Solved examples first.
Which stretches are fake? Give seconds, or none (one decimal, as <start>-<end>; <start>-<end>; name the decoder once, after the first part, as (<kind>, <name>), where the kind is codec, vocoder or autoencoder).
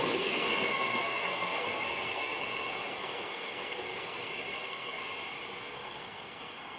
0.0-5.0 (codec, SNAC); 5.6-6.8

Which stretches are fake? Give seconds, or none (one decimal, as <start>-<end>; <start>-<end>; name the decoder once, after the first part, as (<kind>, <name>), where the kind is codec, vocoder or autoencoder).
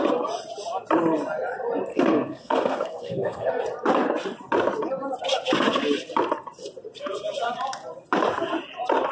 1.9-3.6 (codec, SNAC)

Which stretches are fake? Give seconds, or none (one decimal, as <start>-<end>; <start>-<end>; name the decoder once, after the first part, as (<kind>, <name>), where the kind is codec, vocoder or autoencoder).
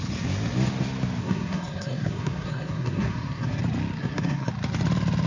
1.2-3.6 (codec, SNAC); 4.0-4.5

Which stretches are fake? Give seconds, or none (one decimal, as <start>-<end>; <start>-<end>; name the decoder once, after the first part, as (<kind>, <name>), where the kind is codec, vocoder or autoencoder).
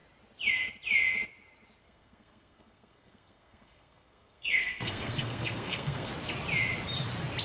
1.8-6.1 (codec, SNAC)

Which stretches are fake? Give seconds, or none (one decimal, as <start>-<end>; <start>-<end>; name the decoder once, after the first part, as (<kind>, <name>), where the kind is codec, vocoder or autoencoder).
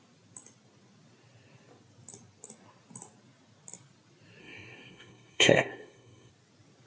4.4-6.3 (codec, SNAC)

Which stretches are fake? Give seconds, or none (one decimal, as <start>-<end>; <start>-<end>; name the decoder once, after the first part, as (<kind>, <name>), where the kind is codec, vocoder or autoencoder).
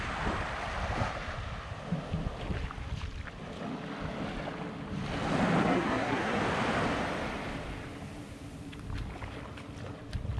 5.6-6.4 (codec, SNAC)